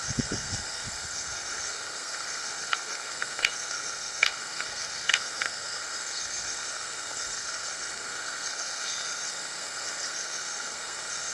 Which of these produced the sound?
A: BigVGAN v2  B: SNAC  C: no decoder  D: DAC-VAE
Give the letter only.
B